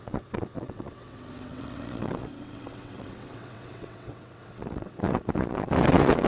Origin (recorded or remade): remade